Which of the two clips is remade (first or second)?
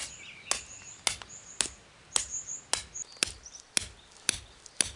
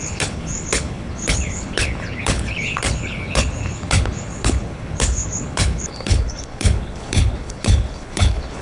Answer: second